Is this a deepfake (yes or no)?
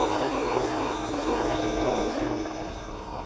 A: yes